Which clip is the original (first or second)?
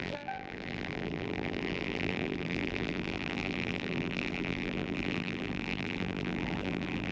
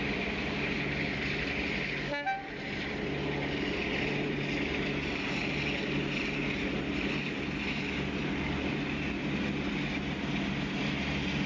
second